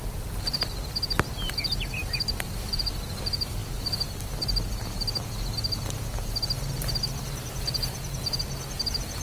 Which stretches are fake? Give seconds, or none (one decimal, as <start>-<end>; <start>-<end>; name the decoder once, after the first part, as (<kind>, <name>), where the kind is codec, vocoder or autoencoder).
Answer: none